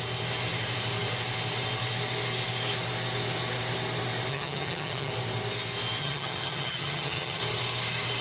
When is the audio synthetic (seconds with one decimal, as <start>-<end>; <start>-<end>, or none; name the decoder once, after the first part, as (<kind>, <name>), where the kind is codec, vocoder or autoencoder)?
4.3-5.1 (vocoder, HiFi-GAN); 6.0-7.4